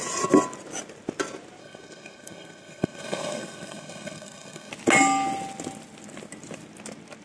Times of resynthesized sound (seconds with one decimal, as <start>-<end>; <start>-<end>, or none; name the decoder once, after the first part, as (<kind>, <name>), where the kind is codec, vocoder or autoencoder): 1.6-4.7 (codec, SNAC)